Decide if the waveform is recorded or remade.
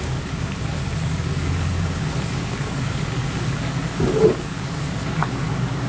remade